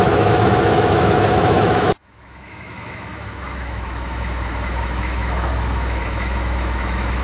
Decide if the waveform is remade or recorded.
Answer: remade